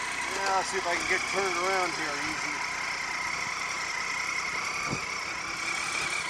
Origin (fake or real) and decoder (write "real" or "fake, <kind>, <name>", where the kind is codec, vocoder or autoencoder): real